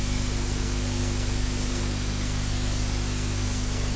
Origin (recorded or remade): remade